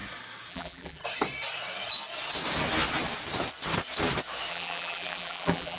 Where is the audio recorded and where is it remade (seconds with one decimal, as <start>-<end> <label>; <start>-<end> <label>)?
0.0-0.5 recorded; 0.5-1.0 remade; 1.0-4.5 recorded; 4.5-5.8 remade